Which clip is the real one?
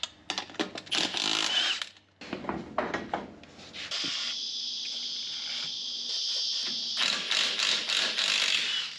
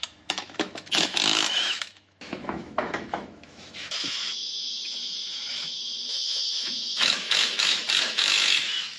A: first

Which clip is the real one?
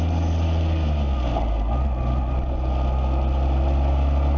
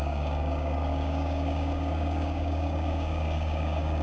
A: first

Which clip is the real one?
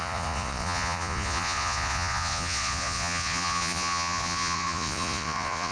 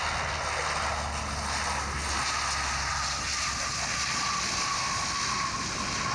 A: second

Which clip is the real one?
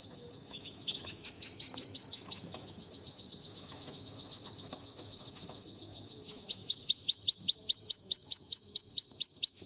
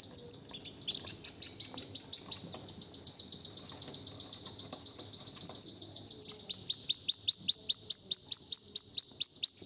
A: second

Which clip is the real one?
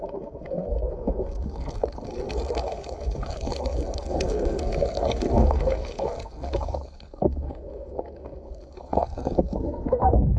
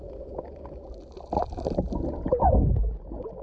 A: second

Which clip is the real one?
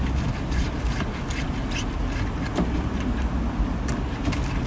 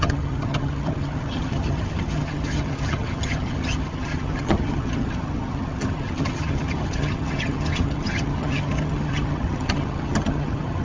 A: first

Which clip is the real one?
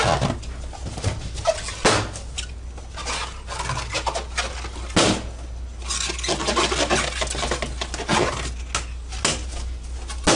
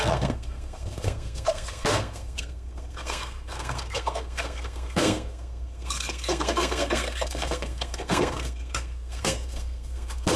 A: first